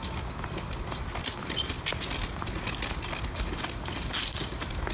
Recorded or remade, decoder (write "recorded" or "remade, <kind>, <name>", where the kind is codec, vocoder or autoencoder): recorded